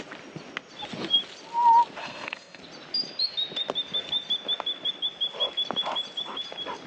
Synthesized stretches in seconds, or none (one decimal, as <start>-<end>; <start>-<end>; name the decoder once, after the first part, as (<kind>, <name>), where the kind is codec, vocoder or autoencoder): 2.0-2.6 (codec, SNAC)